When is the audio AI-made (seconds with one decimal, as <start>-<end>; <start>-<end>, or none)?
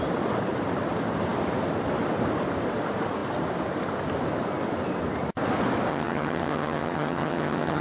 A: 5.9-7.8